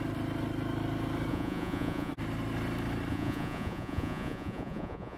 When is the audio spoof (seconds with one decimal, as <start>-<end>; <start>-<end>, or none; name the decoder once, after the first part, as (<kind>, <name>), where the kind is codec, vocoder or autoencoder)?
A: 1.3-2.1 (vocoder, Vocos); 3.1-5.2